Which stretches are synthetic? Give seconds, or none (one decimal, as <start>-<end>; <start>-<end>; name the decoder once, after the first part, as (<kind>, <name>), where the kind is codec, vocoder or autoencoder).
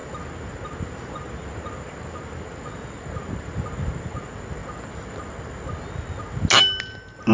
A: none